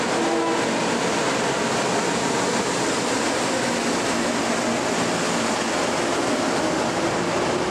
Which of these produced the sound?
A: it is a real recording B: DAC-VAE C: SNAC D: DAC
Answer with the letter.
A